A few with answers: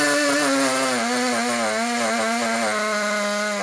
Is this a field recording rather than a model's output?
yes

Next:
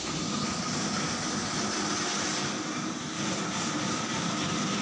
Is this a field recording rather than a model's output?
yes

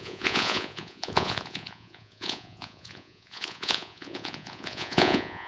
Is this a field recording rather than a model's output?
no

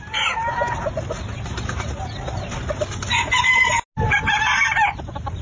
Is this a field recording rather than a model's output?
yes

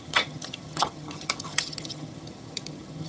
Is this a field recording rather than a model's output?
no